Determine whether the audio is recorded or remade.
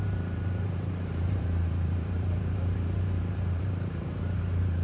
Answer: remade